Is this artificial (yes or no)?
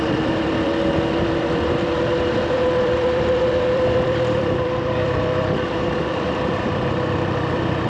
yes